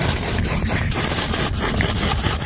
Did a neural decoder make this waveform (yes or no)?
yes